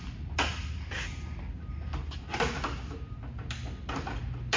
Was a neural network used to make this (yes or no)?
no